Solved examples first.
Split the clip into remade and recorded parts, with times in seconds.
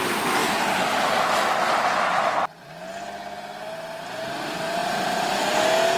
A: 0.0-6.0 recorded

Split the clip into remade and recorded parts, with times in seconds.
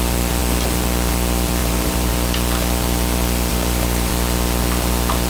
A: 0.0-1.6 recorded; 1.6-2.1 remade; 2.1-3.5 recorded; 3.5-4.1 remade; 4.1-5.3 recorded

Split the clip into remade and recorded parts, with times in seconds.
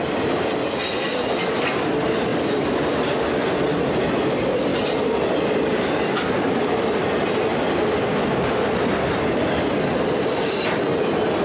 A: 0.0-11.4 recorded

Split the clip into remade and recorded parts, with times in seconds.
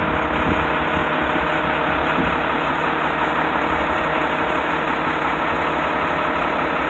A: 0.0-1.0 recorded; 1.0-4.7 remade; 4.7-6.9 recorded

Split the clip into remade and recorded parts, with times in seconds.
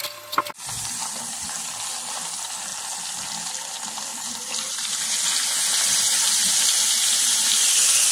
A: 0.0-4.1 recorded; 4.1-6.4 remade; 6.4-8.1 recorded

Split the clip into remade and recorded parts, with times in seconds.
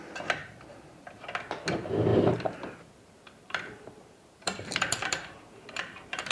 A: 0.0-0.4 recorded; 0.4-1.0 remade; 1.0-2.1 recorded; 2.1-6.3 remade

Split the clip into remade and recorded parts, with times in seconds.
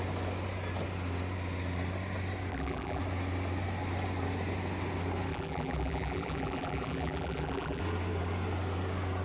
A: 0.0-2.5 recorded; 2.5-3.0 remade; 3.0-5.3 recorded; 5.3-7.8 remade; 7.8-9.2 recorded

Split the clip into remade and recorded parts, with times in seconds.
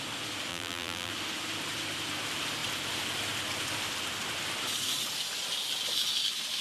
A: 0.0-0.5 recorded; 0.5-1.1 remade; 1.1-6.6 recorded